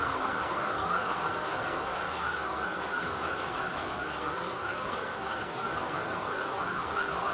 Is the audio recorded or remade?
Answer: remade